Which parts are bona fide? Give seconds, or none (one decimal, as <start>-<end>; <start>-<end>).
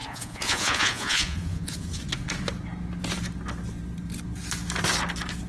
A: 2.0-5.5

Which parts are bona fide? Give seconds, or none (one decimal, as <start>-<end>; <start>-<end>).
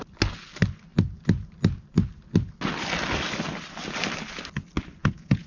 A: 0.0-5.0